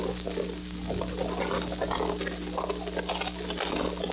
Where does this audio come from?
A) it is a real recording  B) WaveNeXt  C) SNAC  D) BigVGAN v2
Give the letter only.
A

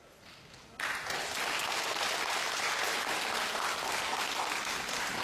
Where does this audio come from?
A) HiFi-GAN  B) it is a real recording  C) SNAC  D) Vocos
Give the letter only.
B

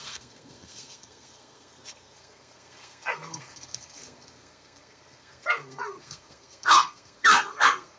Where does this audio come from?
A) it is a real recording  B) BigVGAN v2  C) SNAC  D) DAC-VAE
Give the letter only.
C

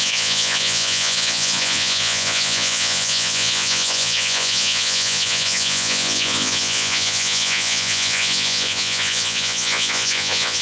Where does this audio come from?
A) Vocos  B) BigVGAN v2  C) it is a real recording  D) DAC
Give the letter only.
A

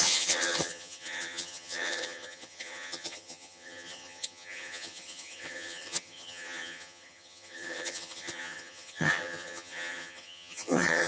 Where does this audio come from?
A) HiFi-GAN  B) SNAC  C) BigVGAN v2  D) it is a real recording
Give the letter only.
A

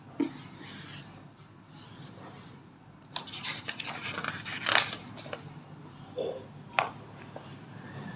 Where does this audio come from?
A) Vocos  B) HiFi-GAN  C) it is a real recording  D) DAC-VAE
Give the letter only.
C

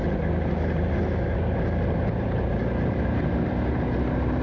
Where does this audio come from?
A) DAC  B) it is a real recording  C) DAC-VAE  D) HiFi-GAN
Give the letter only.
B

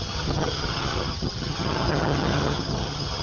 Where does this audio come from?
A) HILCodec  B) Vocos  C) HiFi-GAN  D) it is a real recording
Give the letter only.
C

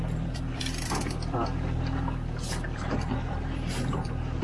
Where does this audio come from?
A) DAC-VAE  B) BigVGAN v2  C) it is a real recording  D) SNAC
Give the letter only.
B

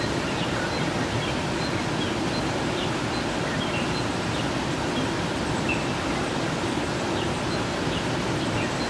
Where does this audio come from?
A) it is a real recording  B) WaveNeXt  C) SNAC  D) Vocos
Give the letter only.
A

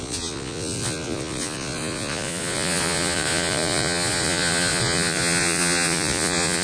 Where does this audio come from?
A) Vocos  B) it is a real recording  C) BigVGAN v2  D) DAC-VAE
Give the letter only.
A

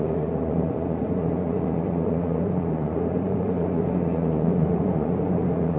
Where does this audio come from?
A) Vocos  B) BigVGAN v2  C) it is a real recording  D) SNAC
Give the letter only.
A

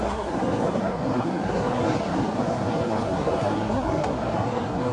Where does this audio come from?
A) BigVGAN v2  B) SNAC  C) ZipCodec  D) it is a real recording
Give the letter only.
B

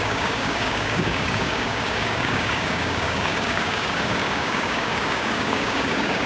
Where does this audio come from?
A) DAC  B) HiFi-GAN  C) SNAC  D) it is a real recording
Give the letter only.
A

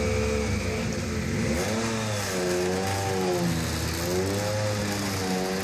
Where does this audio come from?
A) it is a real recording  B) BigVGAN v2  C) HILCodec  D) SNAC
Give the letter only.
A